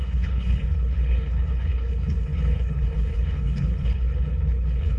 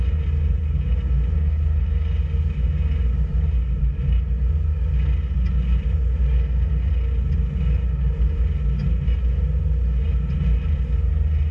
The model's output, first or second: first